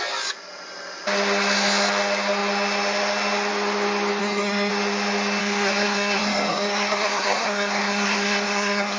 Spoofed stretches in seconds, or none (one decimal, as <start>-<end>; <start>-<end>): 4.2-4.7; 5.4-9.0